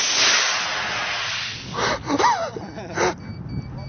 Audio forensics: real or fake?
real